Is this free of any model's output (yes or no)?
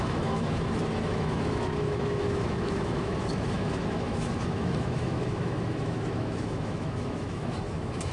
no